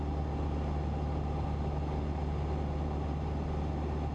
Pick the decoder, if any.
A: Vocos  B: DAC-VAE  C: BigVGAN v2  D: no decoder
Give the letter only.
D